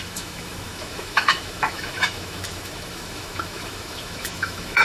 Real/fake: fake